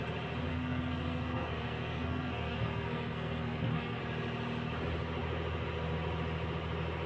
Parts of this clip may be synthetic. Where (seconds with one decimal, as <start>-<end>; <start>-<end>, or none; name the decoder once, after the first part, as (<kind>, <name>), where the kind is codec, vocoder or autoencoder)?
0.5-4.0 (codec, SNAC)